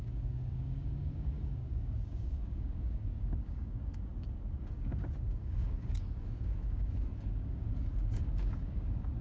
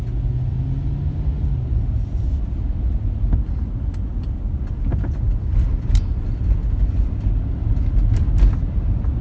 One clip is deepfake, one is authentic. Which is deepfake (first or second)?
first